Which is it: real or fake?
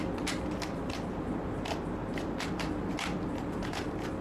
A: real